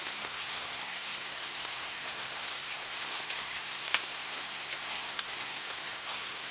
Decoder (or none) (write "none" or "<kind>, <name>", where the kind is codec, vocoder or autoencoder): codec, SNAC